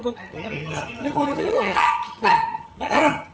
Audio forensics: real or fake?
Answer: fake